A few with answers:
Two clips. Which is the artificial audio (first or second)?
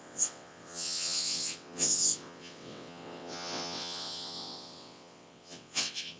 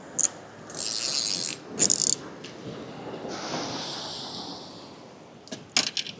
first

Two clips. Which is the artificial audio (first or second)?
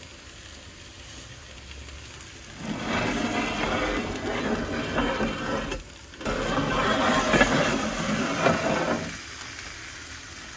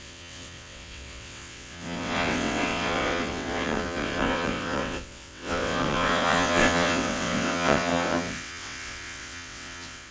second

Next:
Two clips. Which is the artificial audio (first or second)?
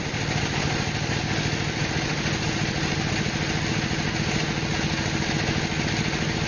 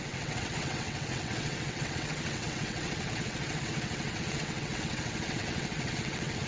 second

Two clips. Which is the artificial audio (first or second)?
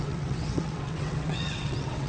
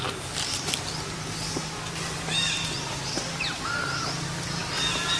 first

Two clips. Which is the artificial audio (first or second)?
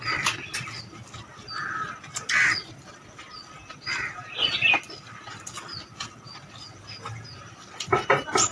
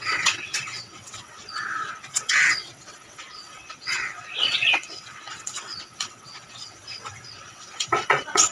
second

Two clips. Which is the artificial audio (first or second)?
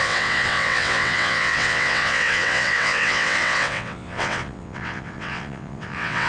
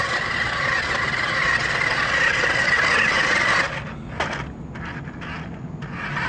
first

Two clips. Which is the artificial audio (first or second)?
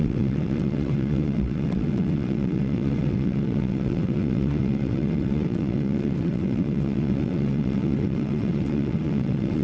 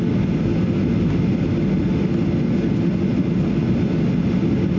first